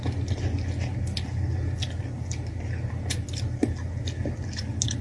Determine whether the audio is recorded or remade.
recorded